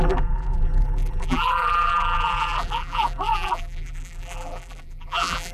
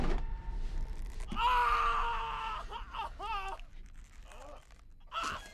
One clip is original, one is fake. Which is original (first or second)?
second